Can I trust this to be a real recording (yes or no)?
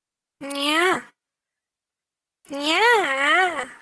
yes